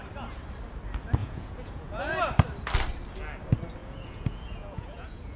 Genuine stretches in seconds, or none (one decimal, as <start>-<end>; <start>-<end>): 0.0-1.2; 2.2-3.8